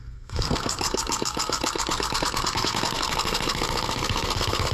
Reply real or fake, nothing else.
fake